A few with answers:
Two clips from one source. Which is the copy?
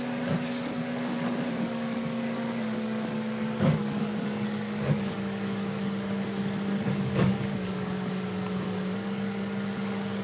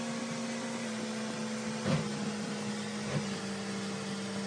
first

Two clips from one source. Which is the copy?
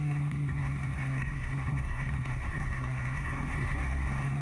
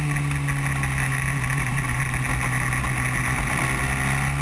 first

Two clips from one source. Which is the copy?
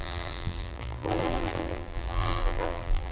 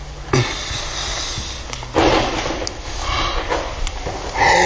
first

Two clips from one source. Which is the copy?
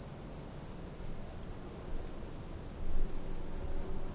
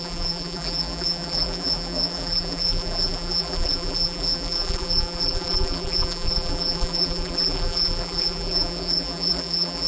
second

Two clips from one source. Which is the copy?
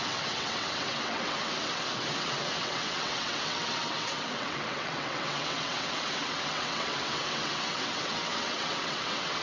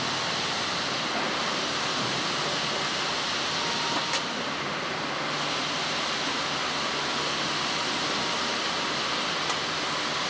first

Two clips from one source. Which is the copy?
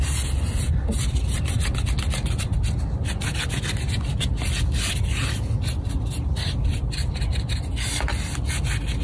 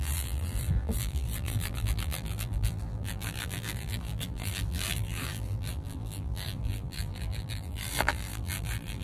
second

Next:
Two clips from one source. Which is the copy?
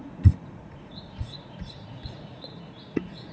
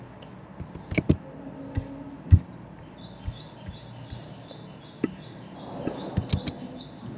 first